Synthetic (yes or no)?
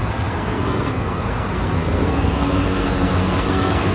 yes